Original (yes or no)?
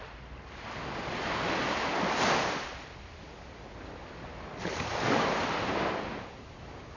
yes